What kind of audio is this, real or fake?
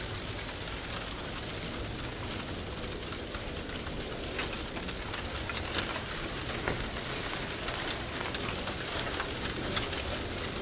real